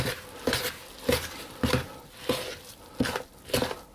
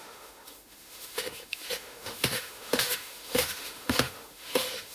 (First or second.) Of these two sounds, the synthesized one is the second